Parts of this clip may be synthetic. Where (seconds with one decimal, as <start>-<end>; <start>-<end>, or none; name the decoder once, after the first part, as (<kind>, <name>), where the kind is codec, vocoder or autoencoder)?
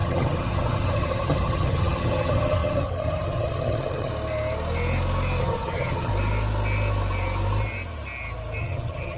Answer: 0.0-4.1 (vocoder, HiFi-GAN); 5.4-6.1; 8.6-9.2